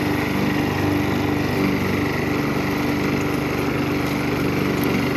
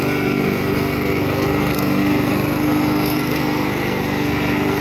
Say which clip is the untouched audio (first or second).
first